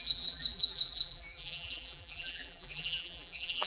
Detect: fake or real fake